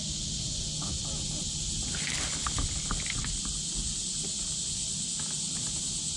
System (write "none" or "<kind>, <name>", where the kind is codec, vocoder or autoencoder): none